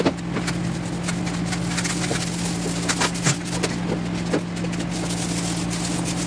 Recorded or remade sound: recorded